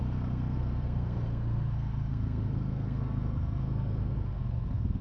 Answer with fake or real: fake